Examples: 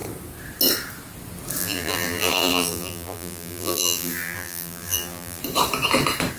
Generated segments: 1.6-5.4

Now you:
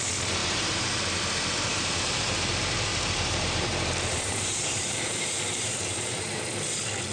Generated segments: 0.4-1.1; 1.7-2.5; 2.9-6.4

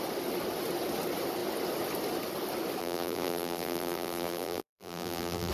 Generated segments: 2.8-5.5

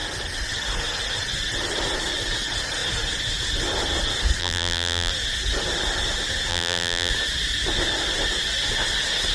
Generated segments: 4.4-5.1; 6.5-7.1

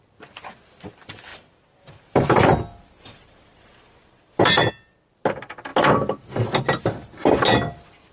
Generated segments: 1.3-4.7